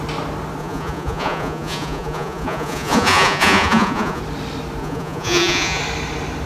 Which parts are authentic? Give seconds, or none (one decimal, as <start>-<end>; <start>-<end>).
0.0-0.6; 4.2-4.8; 5.8-6.5